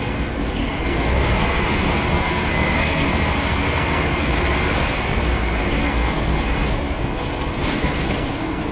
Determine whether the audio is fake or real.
fake